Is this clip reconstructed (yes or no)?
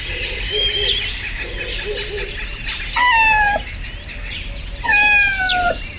no